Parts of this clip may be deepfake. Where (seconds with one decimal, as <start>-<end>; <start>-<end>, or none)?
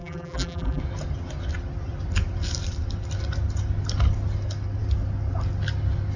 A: 0.0-0.8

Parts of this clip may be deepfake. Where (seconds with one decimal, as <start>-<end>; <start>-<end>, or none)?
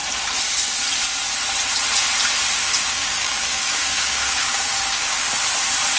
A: 2.6-5.3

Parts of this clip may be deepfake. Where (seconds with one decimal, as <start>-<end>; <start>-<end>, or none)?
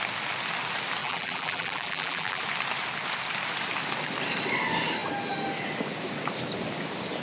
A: 1.0-2.4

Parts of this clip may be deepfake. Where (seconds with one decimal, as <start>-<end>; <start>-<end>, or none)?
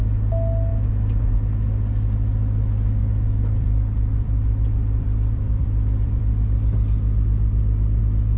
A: 3.0-8.0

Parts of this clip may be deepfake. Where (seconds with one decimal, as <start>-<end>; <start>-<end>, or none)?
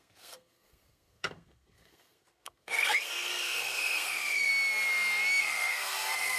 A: 0.0-4.5; 5.4-6.4